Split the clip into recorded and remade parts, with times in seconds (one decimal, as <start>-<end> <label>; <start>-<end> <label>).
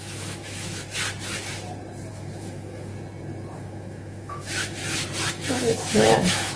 0.0-0.8 remade; 0.8-2.1 recorded; 2.1-2.9 remade; 2.9-3.6 recorded; 3.6-4.8 remade; 4.8-5.3 recorded; 5.3-6.6 remade